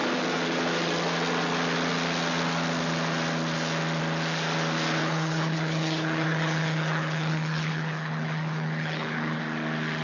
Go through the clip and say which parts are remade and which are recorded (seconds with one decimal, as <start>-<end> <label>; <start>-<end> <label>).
0.0-5.0 recorded; 5.0-9.4 remade; 9.4-10.0 recorded